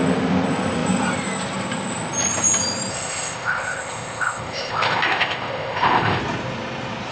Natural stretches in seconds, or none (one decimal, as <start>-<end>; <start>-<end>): 0.0-2.9; 6.2-7.1